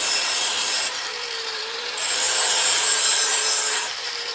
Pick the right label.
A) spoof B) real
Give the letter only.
A